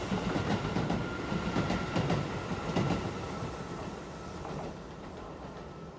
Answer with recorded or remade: recorded